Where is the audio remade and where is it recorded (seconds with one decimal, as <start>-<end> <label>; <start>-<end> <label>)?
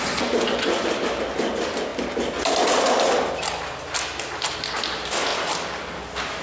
0.0-6.4 recorded